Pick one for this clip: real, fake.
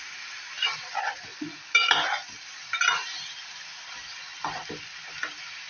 real